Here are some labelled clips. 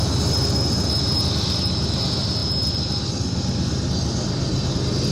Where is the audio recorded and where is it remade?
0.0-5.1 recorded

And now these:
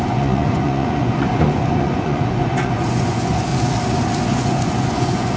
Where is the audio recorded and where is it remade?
0.0-3.5 remade; 3.5-4.2 recorded; 4.2-5.4 remade

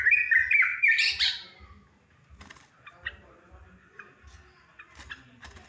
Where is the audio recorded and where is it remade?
0.0-5.7 recorded